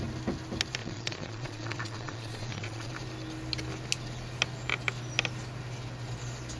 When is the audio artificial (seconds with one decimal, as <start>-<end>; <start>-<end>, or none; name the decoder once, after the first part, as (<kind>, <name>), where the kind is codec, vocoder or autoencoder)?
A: 0.8-2.9 (vocoder, Vocos)